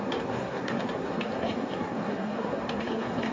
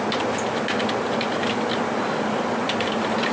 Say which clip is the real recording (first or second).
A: second